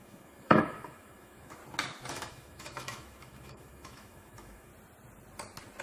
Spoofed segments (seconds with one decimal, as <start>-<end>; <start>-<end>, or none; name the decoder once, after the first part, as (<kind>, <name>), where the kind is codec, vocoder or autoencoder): 0.0-1.6 (autoencoder, DAC-VAE); 2.1-4.7